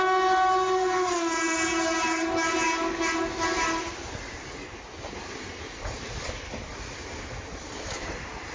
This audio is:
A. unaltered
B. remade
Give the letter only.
A